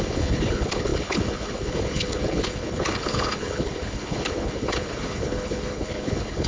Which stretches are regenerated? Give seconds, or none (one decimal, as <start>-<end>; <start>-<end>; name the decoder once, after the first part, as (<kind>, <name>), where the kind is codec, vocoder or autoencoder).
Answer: 0.0-6.5 (codec, HILCodec)